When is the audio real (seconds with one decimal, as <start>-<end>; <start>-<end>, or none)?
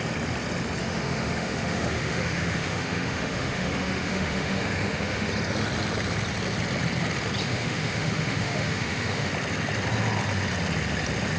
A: 0.0-0.8; 5.3-7.4; 9.3-11.4